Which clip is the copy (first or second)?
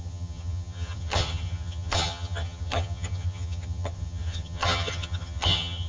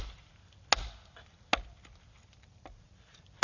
first